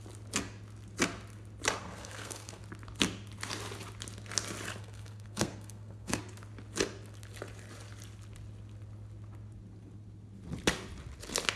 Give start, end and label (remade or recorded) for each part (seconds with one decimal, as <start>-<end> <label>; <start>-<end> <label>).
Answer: 0.0-1.8 recorded; 1.8-2.6 remade; 2.6-4.8 recorded; 4.8-6.2 remade; 6.2-11.6 recorded